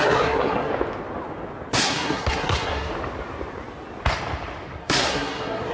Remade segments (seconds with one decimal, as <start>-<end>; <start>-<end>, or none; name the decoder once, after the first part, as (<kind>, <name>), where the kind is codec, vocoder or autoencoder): 0.0-0.7 (codec, SNAC); 1.7-2.9; 4.8-5.7